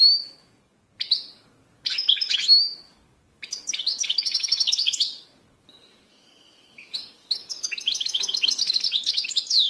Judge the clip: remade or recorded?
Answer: remade